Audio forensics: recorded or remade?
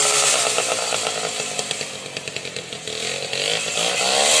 recorded